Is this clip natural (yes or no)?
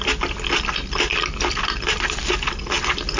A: yes